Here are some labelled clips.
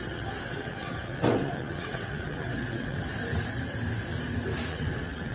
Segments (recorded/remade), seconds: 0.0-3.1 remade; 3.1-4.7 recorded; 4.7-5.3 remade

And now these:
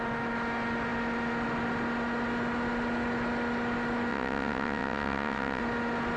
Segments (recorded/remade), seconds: 0.0-4.1 recorded; 4.1-5.6 remade; 5.6-6.2 recorded

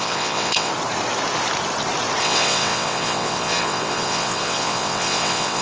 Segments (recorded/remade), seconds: 0.0-0.7 remade; 0.7-2.2 recorded; 2.2-5.6 remade

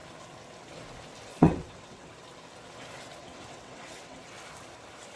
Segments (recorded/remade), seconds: 0.0-1.3 recorded; 1.3-2.1 remade; 2.1-3.2 recorded; 3.2-4.2 remade; 4.2-5.2 recorded

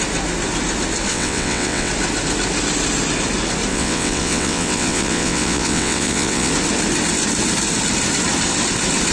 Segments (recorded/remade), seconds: 0.0-1.1 recorded; 1.1-1.9 remade; 1.9-3.7 recorded; 3.7-6.5 remade; 6.5-9.1 recorded

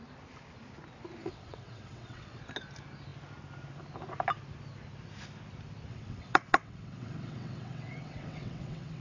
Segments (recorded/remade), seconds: 0.0-1.2 recorded; 1.2-2.4 remade; 2.4-5.9 recorded; 5.9-9.0 remade

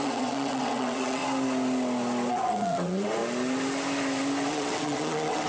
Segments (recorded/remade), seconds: 0.0-1.2 remade; 1.2-2.3 recorded; 2.3-3.2 remade; 3.2-4.5 recorded; 4.5-5.5 remade

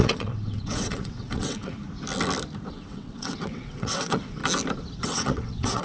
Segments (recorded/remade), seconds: 0.0-1.8 remade; 1.8-2.7 recorded; 2.7-4.4 remade; 4.4-5.0 recorded; 5.0-5.8 remade